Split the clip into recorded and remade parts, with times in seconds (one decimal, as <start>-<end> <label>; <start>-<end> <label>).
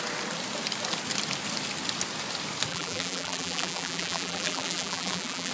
0.0-2.7 recorded; 2.7-5.5 remade